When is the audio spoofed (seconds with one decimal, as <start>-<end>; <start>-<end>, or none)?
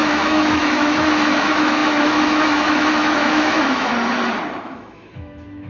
0.0-3.9; 4.6-5.7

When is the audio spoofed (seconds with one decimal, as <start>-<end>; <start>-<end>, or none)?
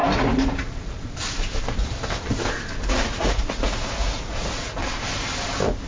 2.9-4.8